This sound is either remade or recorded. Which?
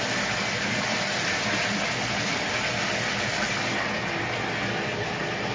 recorded